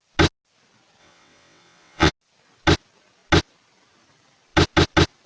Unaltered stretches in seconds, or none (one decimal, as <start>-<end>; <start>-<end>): 0.0-1.0; 2.1-5.3